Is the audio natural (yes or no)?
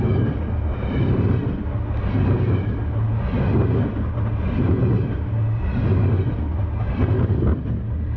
yes